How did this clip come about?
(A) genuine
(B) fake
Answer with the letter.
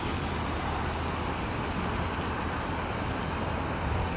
A